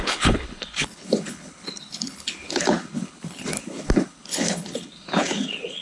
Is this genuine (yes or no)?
no